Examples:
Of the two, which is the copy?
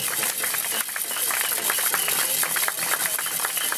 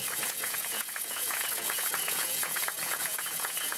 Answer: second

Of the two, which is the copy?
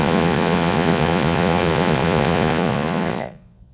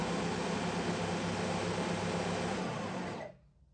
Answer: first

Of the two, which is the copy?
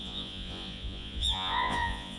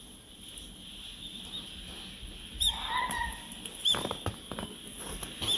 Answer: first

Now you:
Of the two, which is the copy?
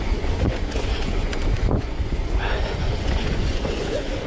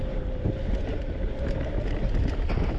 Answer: first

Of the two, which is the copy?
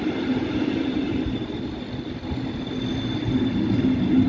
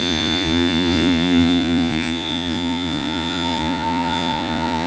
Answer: second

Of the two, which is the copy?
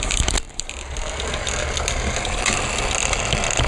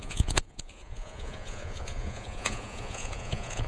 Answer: second